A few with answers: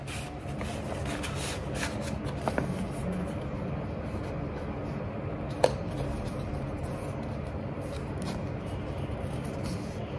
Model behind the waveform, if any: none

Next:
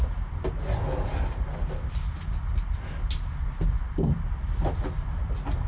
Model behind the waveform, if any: none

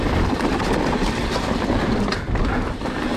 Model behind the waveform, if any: none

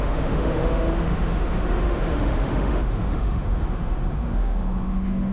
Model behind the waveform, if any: autoencoder, DAC-VAE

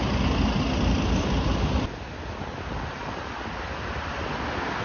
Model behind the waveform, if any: none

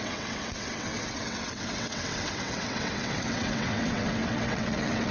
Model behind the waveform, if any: vocoder, WaveNeXt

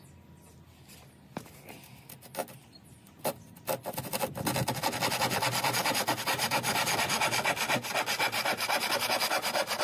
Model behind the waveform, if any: none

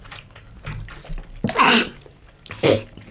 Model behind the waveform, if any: none